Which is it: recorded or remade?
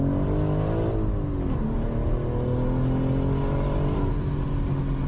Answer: recorded